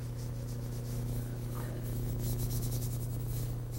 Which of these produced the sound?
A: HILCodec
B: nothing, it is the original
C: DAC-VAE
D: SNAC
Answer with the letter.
C